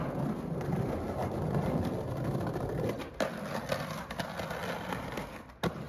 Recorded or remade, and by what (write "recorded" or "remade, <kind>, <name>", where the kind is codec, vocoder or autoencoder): recorded